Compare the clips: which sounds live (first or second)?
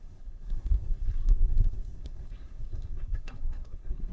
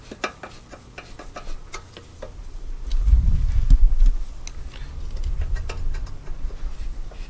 second